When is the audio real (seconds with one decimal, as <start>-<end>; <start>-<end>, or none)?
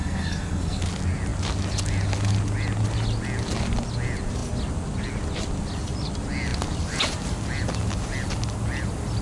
0.8-9.2